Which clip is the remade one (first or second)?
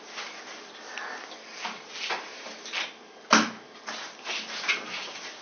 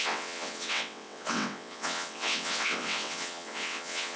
second